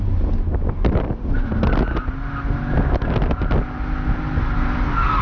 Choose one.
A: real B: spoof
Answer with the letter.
A